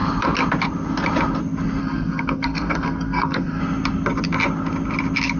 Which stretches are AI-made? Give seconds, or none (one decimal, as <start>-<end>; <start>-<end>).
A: 1.8-3.6